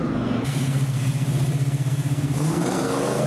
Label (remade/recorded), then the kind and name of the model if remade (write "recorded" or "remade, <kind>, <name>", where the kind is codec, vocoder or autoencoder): remade, codec, SNAC